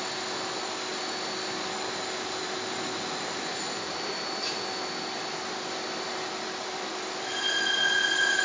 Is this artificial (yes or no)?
no